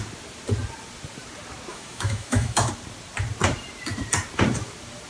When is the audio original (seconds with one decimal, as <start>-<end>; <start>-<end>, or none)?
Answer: 0.0-1.7; 2.7-5.1